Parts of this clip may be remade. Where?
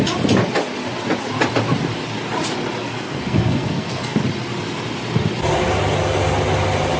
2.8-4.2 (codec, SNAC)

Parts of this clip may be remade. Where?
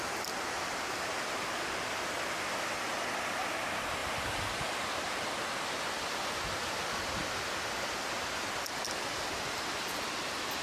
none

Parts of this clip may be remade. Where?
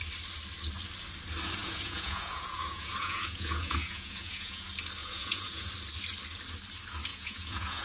1.6-4.6 (vocoder, Vocos); 5.0-5.7; 7.1-7.8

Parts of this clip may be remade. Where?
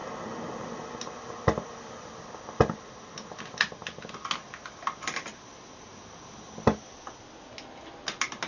none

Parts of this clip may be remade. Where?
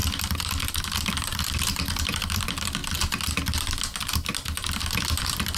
0.7-2.8 (vocoder, BigVGAN v2); 5.1-5.6